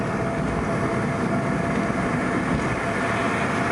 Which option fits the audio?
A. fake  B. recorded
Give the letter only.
B